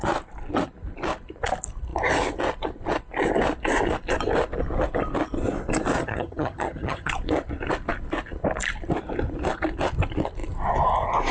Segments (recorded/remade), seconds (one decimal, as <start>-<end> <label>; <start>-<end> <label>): 0.0-6.0 recorded; 6.0-7.1 remade; 7.1-11.3 recorded